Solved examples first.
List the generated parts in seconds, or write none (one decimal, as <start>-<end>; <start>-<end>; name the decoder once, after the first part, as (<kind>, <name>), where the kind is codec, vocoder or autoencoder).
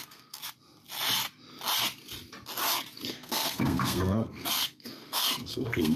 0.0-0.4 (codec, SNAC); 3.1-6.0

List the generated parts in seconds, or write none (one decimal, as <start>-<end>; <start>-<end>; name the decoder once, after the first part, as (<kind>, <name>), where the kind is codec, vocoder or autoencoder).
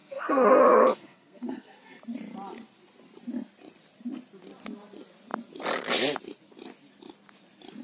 0.0-2.0 (codec, SNAC)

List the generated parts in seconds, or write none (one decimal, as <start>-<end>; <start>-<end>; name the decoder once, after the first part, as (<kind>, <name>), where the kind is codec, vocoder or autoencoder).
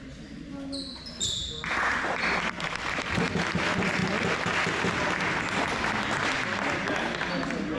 none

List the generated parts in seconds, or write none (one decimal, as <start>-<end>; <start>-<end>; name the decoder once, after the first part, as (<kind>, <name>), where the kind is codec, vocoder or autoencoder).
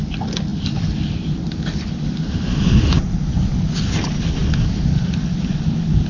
none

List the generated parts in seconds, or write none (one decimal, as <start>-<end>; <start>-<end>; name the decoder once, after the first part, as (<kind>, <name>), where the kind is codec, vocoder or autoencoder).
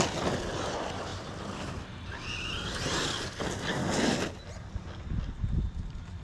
none